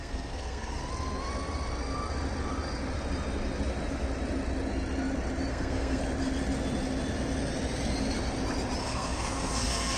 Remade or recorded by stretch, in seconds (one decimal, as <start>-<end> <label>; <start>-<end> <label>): 0.0-0.8 remade; 0.8-5.5 recorded; 5.5-6.0 remade; 6.0-8.8 recorded; 8.8-10.0 remade